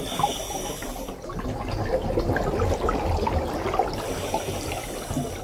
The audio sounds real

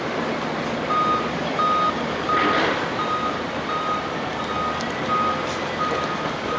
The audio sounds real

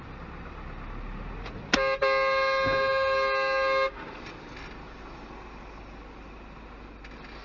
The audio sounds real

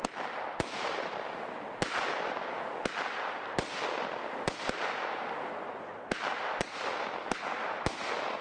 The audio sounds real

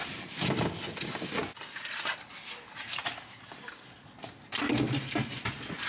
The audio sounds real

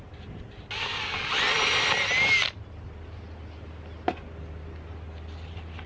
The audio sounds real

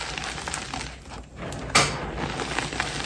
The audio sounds real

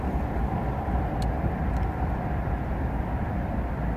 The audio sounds real